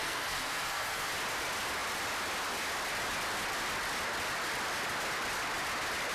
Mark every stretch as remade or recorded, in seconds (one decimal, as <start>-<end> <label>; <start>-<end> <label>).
0.0-1.1 remade; 1.1-6.1 recorded